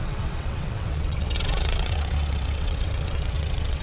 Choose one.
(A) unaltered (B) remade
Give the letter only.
B